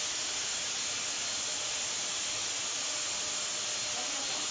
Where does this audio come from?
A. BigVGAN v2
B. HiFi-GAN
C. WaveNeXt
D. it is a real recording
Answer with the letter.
D